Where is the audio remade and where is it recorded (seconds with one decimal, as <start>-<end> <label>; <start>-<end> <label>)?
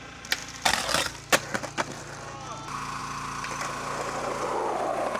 0.0-5.2 recorded